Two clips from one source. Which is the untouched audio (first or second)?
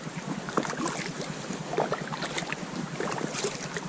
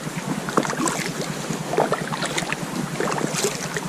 second